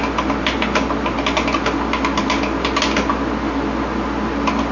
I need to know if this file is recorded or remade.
recorded